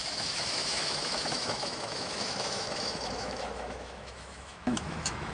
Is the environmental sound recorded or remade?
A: remade